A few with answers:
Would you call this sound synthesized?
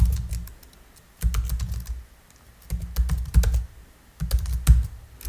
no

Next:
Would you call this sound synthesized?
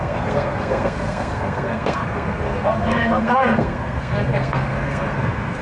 yes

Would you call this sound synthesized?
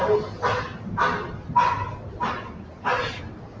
no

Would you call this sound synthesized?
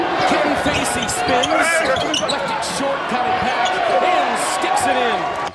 no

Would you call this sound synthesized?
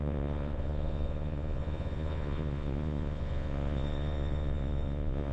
yes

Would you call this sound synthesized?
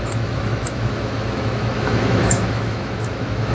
yes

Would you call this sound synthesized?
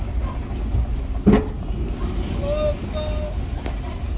no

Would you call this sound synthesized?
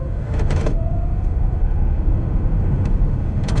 yes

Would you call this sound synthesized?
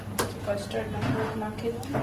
no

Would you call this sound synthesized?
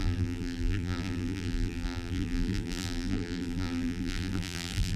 yes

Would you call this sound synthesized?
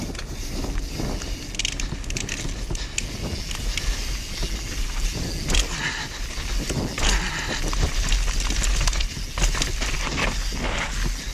no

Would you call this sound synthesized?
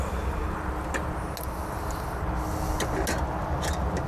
no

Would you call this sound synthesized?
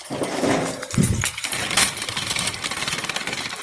no